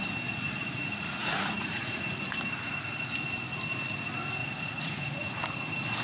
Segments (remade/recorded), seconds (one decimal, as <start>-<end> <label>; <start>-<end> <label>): 0.0-0.6 recorded; 0.6-2.0 remade; 2.0-4.4 recorded; 4.4-5.4 remade; 5.4-6.0 recorded

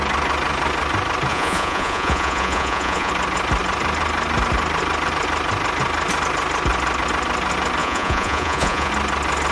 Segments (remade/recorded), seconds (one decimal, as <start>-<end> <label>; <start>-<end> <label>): 0.0-1.3 recorded; 1.3-3.1 remade; 3.1-7.8 recorded; 7.8-8.9 remade; 8.9-9.5 recorded